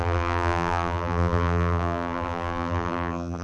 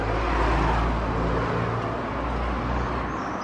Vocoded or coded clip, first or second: first